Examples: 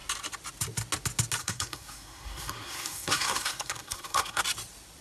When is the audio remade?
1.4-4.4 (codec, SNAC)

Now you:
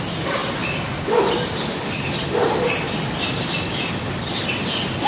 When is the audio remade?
none

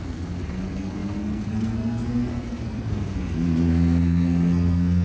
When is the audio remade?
0.0-5.0 (codec, SNAC)

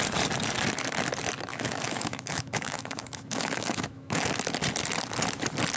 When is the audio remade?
1.5-4.3 (autoencoder, DAC-VAE)